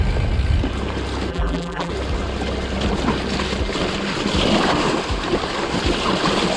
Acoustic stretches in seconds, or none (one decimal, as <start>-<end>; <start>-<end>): 0.0-1.3; 1.9-6.6